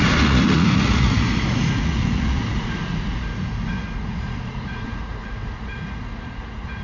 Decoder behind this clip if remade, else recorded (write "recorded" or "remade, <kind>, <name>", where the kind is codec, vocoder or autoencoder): remade, vocoder, Vocos